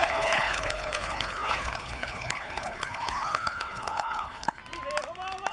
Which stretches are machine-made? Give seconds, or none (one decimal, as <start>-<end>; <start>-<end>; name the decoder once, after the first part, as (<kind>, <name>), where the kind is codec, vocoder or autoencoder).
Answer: 0.0-4.6 (codec, HILCodec)